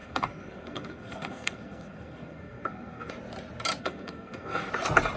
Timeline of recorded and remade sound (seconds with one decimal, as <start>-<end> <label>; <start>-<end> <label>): 0.0-3.1 remade; 3.1-3.8 recorded; 3.8-4.7 remade; 4.7-5.2 recorded